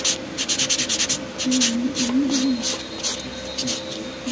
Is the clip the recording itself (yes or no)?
yes